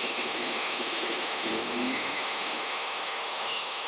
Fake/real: fake